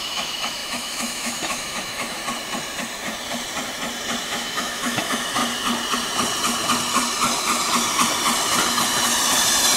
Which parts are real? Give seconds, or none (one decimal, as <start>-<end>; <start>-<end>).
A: 2.2-4.2; 5.4-9.8

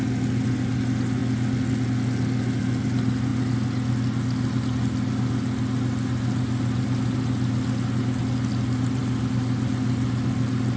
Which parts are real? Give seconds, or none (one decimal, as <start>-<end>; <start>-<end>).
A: 0.0-10.8

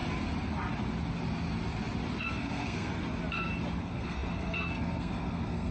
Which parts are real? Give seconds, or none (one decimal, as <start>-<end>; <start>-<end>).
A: 0.0-2.2; 2.9-3.8

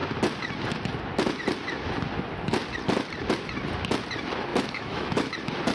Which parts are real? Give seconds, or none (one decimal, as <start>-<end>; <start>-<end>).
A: 0.0-4.5; 5.3-5.7

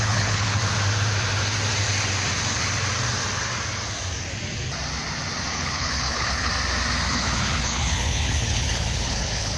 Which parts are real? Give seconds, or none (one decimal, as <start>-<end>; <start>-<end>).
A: 0.6-5.5; 6.5-7.1

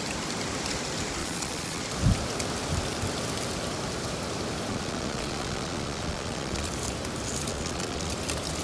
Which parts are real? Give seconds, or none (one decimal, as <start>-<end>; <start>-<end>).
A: 0.0-1.2; 1.8-4.7; 6.7-7.5; 8.1-8.6

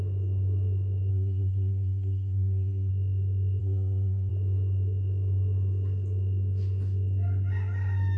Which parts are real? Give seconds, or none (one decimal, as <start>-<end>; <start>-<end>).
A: 0.0-1.1; 2.9-3.6; 4.3-8.2